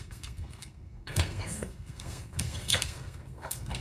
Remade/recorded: remade